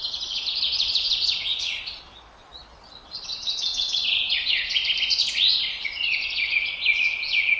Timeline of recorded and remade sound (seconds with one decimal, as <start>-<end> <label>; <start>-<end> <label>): 0.0-4.8 remade; 4.8-5.8 recorded; 5.8-7.6 remade